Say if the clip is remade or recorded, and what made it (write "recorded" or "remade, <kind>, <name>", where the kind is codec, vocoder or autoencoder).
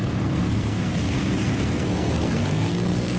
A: remade, codec, SNAC